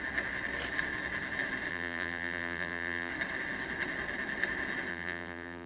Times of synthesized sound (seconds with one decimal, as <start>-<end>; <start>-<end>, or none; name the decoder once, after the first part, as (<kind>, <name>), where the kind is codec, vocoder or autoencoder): 1.7-3.1 (vocoder, BigVGAN v2); 4.9-5.7